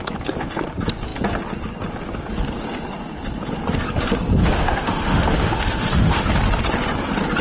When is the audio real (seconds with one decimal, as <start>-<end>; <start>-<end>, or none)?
0.0-4.4; 6.3-7.4